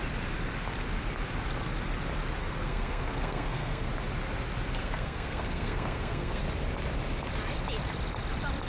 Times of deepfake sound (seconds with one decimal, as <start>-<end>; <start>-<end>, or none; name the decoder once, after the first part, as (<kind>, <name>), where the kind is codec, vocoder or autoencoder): 2.4-3.9 (codec, SNAC); 4.8-6.4